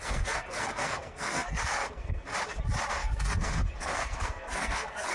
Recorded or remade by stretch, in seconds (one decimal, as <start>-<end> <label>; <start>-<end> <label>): 0.0-2.3 remade; 2.3-2.9 recorded; 2.9-5.1 remade